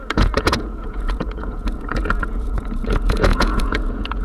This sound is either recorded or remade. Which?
remade